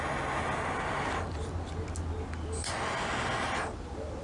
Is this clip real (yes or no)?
yes